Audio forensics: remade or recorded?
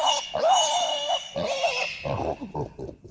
recorded